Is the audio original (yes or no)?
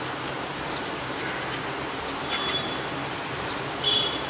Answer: no